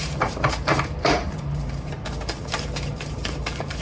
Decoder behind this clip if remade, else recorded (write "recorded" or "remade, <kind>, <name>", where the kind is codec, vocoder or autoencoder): remade, vocoder, BigVGAN v2